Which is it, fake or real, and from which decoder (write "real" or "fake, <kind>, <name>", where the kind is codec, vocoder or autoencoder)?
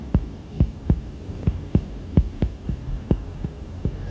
fake, codec, DAC